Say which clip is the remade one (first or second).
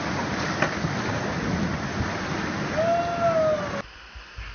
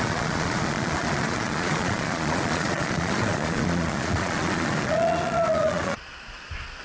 second